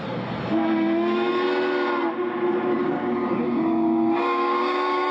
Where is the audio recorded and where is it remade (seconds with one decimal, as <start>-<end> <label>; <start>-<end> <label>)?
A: 0.0-2.8 recorded; 2.8-5.1 remade